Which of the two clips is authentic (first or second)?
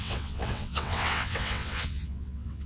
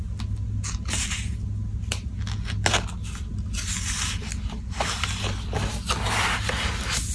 second